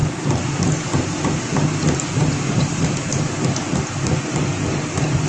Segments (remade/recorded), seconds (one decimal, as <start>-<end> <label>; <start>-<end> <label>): 0.0-3.0 remade; 3.0-5.3 recorded